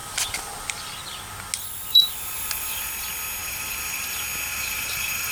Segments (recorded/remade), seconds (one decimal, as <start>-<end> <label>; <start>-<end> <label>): 0.0-1.9 recorded; 1.9-2.9 remade; 2.9-3.4 recorded; 3.4-4.1 remade; 4.1-4.5 recorded; 4.5-5.3 remade